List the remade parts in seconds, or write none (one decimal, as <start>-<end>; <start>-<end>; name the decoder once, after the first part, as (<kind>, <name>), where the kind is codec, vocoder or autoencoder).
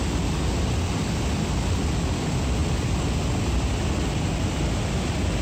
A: none